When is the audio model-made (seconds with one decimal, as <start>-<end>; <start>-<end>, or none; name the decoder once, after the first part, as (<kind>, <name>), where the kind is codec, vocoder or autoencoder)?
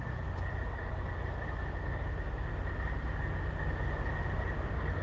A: none